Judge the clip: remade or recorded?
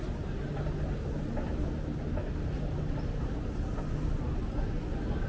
recorded